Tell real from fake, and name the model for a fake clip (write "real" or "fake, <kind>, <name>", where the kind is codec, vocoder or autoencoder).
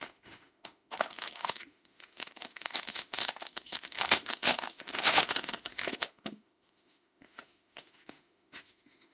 fake, autoencoder, DAC-VAE